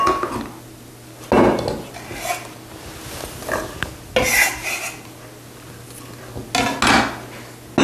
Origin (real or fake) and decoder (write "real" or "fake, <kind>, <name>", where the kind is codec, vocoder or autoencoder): real